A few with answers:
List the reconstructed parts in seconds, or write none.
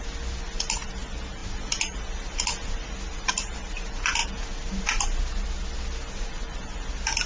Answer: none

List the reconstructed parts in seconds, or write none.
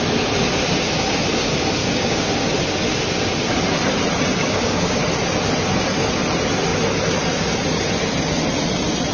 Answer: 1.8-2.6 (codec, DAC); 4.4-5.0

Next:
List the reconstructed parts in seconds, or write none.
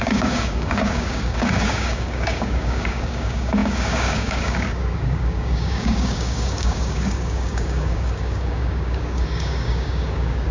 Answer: 0.0-10.5 (codec, DAC)